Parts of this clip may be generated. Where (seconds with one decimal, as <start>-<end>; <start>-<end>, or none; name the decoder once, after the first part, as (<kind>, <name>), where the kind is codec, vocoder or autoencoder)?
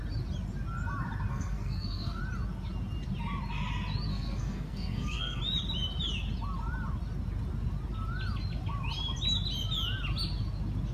1.3-2.2 (codec, SNAC); 4.1-5.4